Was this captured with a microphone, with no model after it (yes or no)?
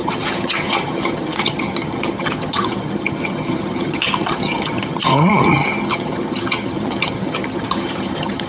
no